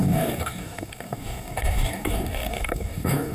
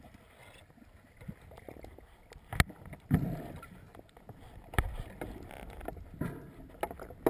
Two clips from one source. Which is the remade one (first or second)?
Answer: first